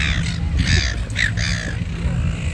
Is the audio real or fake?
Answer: real